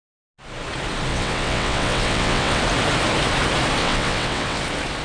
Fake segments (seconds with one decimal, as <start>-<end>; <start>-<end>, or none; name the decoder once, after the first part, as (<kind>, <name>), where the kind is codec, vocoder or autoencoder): 1.1-2.6 (vocoder, WaveNeXt); 3.8-4.6